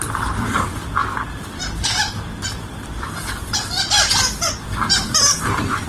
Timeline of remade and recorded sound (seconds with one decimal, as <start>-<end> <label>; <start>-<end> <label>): 0.0-1.0 recorded; 1.0-4.5 remade; 4.5-5.9 recorded